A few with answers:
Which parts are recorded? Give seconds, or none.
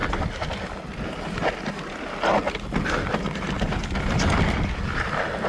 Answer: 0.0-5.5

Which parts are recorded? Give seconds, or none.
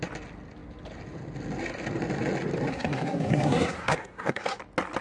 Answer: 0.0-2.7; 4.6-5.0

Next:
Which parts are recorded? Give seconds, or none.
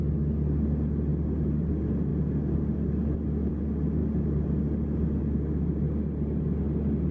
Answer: 0.0-7.1